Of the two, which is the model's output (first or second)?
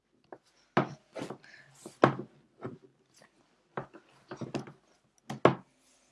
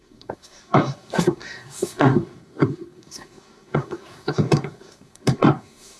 second